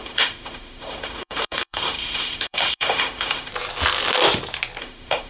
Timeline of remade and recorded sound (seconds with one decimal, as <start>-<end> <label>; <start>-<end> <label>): 0.0-3.5 remade; 3.5-4.8 recorded; 4.8-5.3 remade